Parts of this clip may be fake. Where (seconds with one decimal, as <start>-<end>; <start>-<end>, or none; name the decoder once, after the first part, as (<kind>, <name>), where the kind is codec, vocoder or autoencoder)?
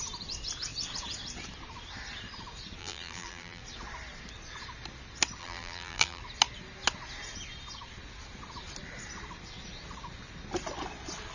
2.8-3.6 (vocoder, BigVGAN v2); 5.4-6.2